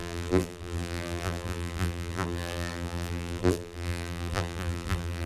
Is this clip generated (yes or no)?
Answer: yes